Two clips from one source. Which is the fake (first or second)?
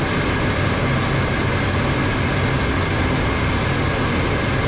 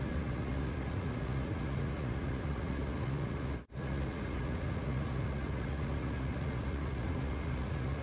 second